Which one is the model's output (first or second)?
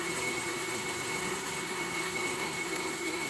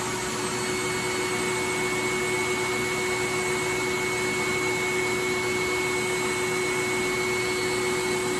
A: first